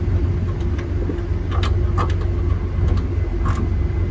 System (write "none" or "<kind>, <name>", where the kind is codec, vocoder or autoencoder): none